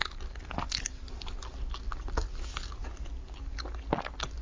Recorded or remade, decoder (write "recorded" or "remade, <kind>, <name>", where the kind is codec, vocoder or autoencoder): recorded